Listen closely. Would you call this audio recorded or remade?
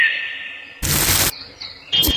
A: recorded